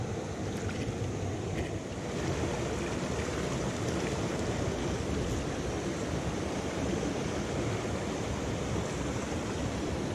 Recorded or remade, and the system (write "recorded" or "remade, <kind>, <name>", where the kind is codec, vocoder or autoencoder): recorded